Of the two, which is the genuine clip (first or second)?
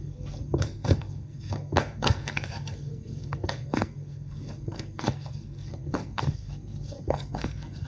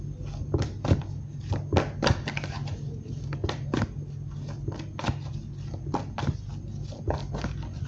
second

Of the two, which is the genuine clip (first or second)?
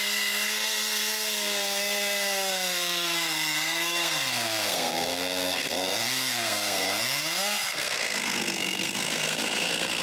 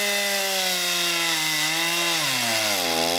second